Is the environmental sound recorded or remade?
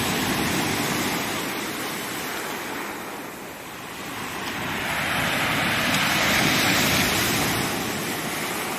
recorded